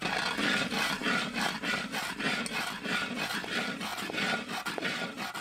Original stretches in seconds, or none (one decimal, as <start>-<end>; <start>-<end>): 0.0-5.4